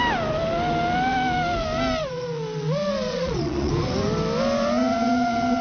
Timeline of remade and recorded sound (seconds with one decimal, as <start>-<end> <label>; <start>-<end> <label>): 0.0-3.1 recorded; 3.1-3.7 remade; 3.7-5.6 recorded